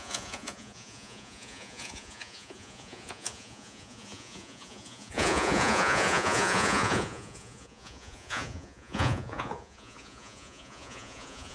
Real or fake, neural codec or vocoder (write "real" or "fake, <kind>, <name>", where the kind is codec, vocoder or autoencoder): fake, vocoder, Vocos